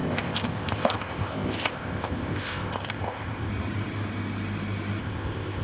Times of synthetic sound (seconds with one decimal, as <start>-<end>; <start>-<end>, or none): 0.0-3.5; 5.0-5.6